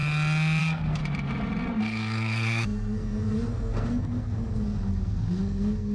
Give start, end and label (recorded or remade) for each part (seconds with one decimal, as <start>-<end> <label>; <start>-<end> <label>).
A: 0.0-0.6 recorded; 0.6-1.0 remade; 1.0-1.8 recorded; 1.8-5.9 remade